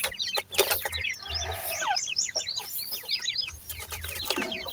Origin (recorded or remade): recorded